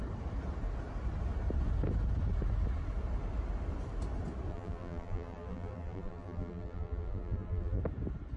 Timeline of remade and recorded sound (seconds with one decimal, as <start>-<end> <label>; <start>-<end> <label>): 0.0-4.5 recorded; 4.5-7.8 remade; 7.8-8.4 recorded